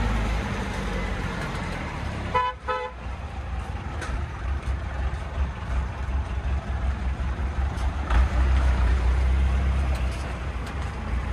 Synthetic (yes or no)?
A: yes